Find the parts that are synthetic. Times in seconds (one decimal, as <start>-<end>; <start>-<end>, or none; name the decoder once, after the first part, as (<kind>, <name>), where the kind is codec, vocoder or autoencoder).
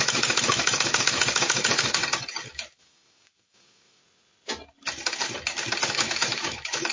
0.0-2.0 (autoencoder, DAC-VAE); 2.5-4.0; 5.9-6.9